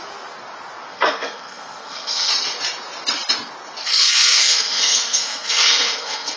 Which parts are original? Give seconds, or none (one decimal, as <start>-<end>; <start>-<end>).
0.0-0.9; 2.3-3.8